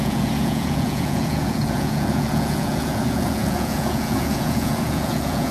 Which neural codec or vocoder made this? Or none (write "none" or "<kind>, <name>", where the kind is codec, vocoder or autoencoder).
vocoder, Vocos